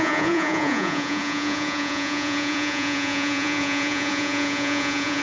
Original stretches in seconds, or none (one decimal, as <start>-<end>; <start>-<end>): none